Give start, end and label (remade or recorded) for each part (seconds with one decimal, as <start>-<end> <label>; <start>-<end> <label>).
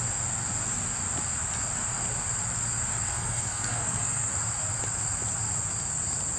0.0-3.1 recorded; 3.1-4.3 remade; 4.3-6.4 recorded